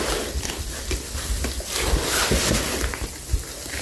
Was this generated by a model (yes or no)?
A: no